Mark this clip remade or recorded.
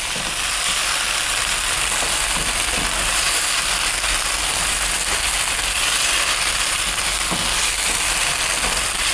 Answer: recorded